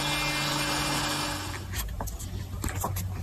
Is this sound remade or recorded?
recorded